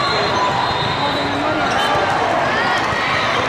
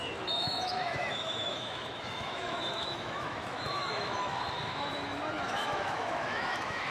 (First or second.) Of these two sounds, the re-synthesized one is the second